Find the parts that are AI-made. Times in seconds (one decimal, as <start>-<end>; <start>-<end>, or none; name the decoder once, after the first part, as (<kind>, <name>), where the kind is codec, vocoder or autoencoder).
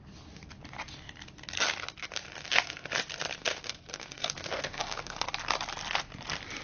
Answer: 2.4-2.9 (codec, SNAC); 3.4-5.3